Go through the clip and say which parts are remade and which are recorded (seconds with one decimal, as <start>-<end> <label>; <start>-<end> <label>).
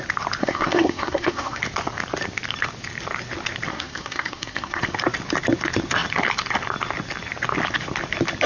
0.0-0.4 recorded; 0.4-1.6 remade; 1.6-3.7 recorded; 3.7-4.8 remade; 4.8-8.5 recorded